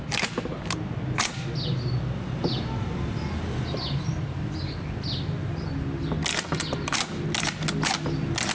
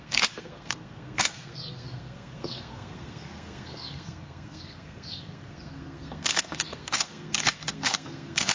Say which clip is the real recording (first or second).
first